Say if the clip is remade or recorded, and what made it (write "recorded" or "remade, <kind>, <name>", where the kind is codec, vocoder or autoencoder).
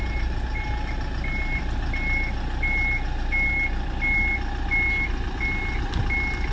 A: recorded